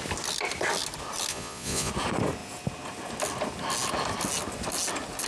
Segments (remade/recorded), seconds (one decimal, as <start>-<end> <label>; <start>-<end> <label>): 0.0-1.3 recorded; 1.3-1.9 remade; 1.9-5.3 recorded